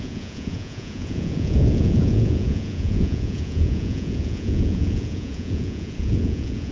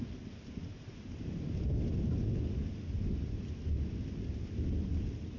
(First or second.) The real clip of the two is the second